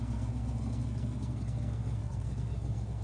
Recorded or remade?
remade